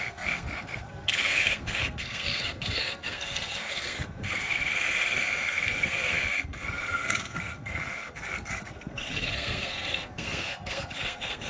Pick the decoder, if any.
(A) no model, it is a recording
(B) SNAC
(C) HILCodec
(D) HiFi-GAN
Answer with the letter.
B